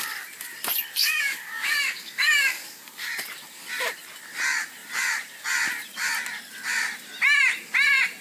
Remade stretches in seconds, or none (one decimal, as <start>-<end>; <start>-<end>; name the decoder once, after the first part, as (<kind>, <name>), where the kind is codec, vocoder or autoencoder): 1.0-3.1 (codec, DAC)